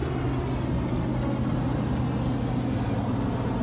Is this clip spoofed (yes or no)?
no